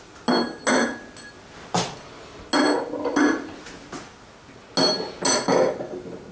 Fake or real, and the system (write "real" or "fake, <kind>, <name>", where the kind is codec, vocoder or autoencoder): real